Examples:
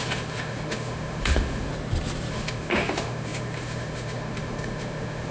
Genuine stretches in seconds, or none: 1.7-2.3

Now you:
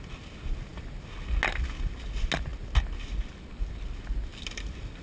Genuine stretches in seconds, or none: 0.0-5.0

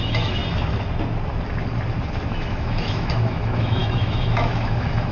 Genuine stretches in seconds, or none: 0.4-2.3

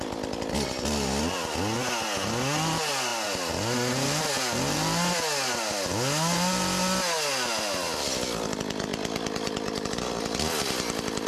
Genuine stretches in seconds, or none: 0.0-11.3

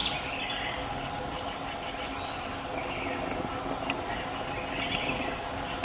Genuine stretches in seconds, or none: 0.0-5.8

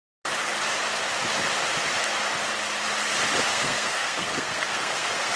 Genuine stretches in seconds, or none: 0.0-3.5